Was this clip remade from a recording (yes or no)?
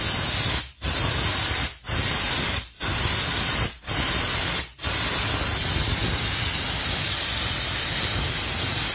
no